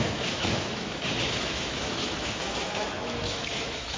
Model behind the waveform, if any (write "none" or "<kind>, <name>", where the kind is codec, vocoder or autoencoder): autoencoder, DAC-VAE